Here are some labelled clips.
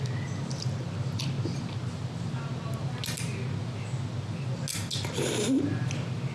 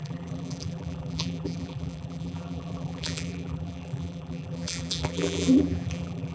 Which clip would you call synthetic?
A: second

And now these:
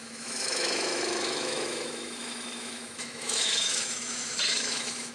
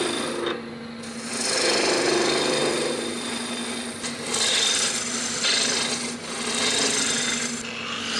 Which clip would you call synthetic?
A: first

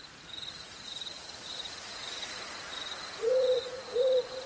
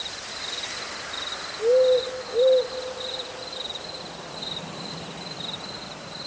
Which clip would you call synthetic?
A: first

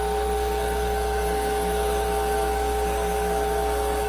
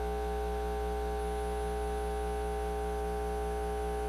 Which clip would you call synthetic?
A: first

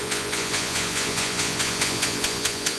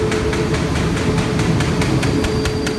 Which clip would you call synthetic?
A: first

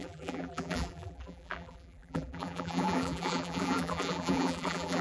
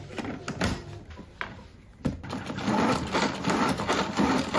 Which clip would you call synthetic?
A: first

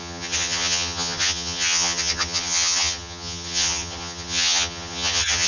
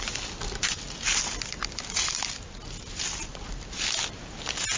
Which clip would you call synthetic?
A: first